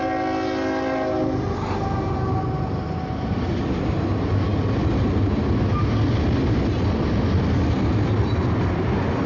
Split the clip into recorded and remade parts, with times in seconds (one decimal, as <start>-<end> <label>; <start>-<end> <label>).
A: 0.0-9.3 recorded